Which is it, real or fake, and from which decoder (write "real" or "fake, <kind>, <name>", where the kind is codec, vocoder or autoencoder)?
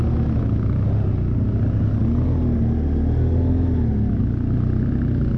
real